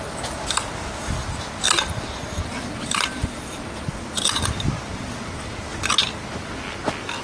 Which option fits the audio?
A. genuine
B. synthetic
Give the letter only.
A